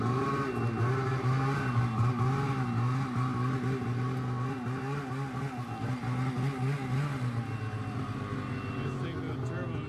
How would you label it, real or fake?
real